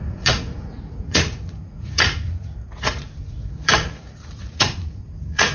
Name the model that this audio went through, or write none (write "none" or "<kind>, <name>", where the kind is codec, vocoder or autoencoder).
vocoder, Vocos